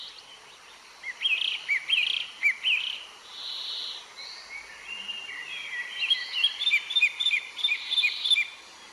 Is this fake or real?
fake